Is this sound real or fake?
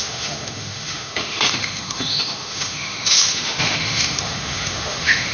fake